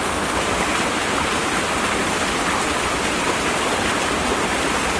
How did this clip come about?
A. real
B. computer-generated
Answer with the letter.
A